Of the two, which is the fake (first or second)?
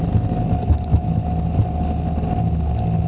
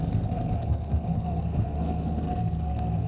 second